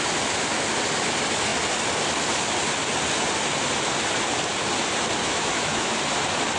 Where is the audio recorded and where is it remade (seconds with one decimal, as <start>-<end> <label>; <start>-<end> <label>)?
0.0-5.2 recorded; 5.2-6.0 remade; 6.0-6.6 recorded